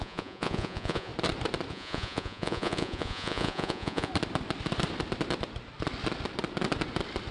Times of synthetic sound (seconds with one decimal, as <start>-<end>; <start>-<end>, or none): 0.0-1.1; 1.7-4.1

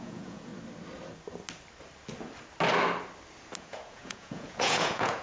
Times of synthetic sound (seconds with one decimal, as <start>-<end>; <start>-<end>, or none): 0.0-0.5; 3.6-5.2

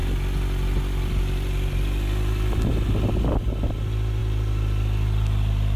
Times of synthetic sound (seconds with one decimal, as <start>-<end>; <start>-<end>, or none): none

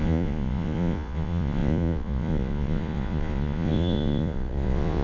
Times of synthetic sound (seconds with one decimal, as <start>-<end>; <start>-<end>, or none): 0.0-5.0

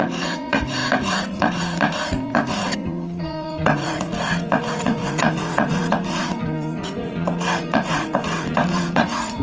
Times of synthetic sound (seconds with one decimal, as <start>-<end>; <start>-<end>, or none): 0.0-9.4

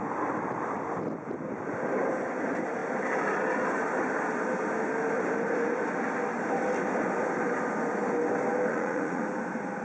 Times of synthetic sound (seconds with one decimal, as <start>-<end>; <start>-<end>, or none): 8.7-9.2